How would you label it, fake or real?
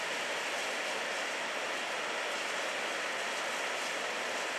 real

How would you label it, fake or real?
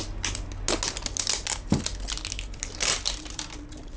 real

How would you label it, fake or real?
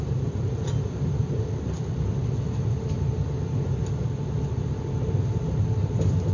real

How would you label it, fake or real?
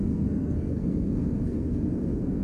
fake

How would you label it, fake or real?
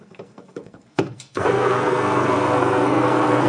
fake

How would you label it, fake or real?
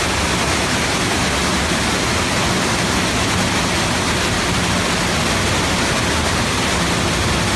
real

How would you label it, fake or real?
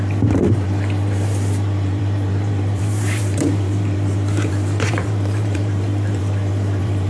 fake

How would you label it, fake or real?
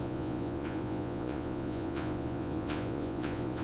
fake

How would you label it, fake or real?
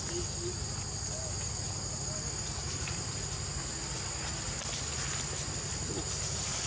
real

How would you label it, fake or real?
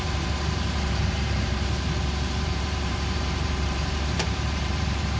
fake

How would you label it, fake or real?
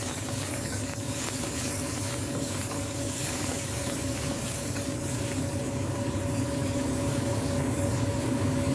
fake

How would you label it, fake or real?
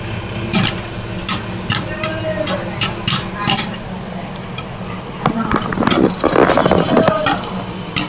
real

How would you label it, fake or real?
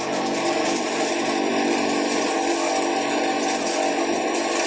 real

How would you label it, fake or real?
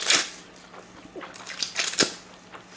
real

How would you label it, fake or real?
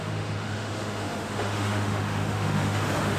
fake